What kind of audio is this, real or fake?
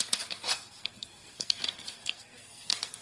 fake